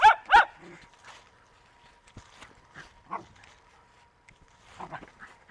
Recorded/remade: recorded